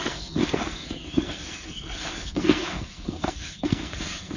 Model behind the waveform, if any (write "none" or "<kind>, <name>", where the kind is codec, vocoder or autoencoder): codec, SNAC